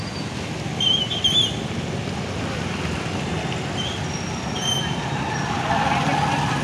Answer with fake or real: real